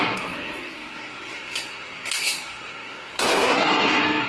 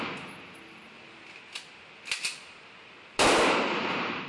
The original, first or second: second